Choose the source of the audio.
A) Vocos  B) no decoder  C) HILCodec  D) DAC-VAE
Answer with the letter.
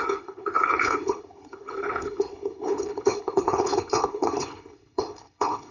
C